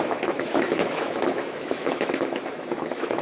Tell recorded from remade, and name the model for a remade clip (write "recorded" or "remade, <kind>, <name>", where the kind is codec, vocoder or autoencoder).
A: remade, autoencoder, DAC-VAE